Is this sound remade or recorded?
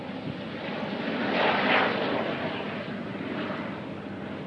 recorded